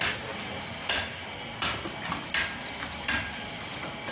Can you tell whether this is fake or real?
real